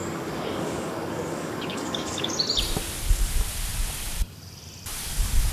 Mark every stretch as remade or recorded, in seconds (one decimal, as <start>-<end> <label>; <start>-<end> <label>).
0.0-2.3 remade; 2.3-5.5 recorded